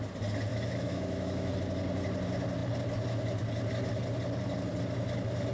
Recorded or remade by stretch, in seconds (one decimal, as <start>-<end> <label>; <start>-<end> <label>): 0.0-0.5 recorded; 0.5-1.5 remade; 1.5-5.5 recorded